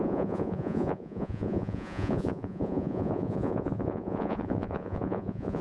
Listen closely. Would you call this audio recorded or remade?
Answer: remade